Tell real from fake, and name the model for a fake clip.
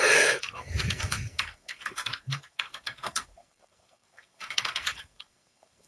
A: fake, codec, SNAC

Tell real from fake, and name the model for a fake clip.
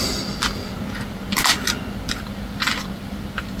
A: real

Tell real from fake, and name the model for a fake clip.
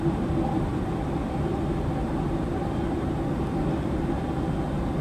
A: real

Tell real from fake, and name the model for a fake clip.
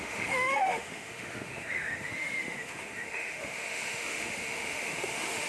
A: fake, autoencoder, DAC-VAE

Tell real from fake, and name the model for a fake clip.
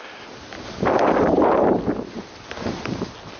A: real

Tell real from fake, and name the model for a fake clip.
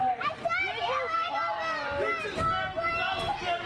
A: real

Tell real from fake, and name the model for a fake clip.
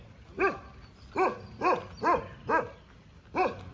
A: real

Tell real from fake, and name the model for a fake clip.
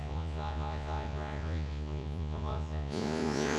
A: fake, vocoder, Vocos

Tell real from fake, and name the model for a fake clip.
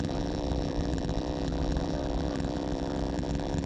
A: fake, vocoder, BigVGAN v2